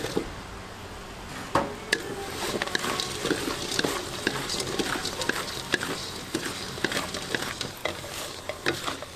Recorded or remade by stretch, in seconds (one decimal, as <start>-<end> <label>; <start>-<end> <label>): 0.0-7.8 recorded; 7.8-8.4 remade; 8.4-9.2 recorded